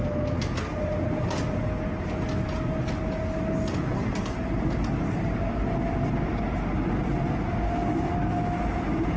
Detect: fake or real real